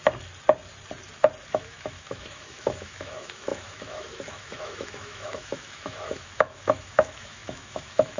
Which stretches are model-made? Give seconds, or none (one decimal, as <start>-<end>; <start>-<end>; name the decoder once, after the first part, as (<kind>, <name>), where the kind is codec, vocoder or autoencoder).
1.5-8.2 (autoencoder, DAC-VAE)